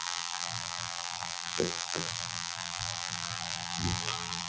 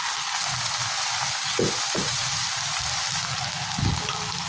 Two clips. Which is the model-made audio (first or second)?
first